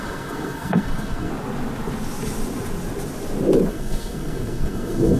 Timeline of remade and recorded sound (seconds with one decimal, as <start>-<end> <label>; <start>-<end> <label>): 0.0-1.3 remade; 1.3-3.7 recorded; 3.7-5.2 remade